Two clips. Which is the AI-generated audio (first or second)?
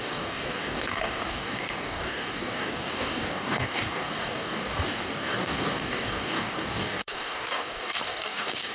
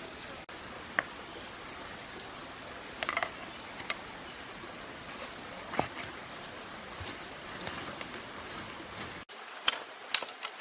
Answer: first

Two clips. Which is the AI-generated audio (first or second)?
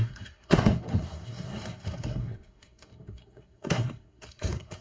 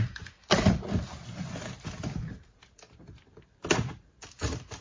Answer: first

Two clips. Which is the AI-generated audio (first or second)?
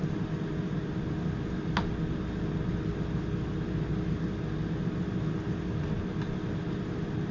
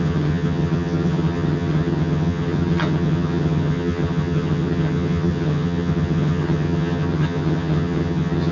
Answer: second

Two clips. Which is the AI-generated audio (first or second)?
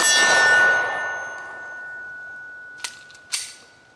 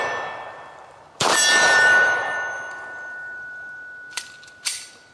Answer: second